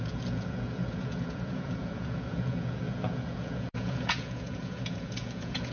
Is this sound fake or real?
fake